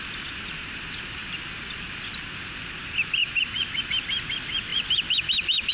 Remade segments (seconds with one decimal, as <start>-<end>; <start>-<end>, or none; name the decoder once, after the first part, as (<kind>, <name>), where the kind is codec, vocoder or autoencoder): 4.7-5.7 (vocoder, BigVGAN v2)